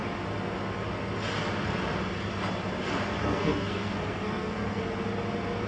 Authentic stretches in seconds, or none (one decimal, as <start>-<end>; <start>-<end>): 0.0-3.2; 4.8-5.7